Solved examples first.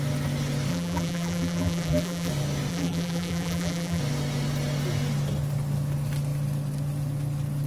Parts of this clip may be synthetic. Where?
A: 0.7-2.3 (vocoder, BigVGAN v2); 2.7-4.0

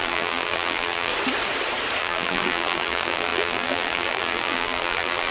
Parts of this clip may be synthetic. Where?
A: 0.0-1.1 (vocoder, BigVGAN v2); 2.0-5.3

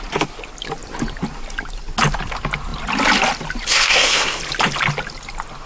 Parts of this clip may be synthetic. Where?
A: 3.7-4.4 (codec, SNAC)

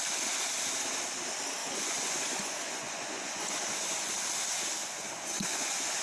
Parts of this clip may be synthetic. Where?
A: 1.6-4.1 (vocoder, Vocos); 4.8-6.0

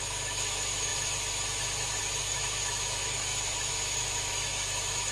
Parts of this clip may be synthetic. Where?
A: 0.0-5.1 (autoencoder, DAC-VAE)